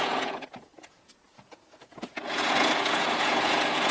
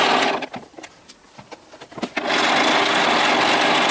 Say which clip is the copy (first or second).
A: first